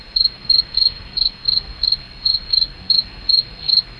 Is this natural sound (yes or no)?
no